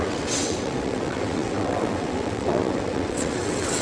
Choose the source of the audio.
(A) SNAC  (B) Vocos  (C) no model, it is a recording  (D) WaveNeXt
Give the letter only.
D